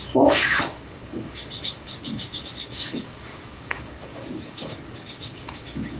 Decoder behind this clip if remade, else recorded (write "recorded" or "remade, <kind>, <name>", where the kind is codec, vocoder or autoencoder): remade, codec, DAC